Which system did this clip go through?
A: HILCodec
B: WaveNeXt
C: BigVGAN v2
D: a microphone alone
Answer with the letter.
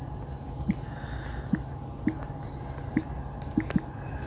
D